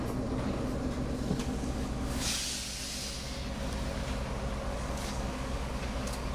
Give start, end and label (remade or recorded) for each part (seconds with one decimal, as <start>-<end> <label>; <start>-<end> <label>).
0.0-1.4 recorded; 1.4-2.3 remade; 2.3-4.7 recorded; 4.7-6.3 remade